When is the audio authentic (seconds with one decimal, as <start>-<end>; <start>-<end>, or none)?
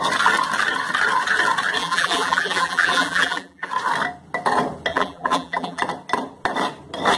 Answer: 0.0-1.8; 3.7-4.9; 5.8-7.2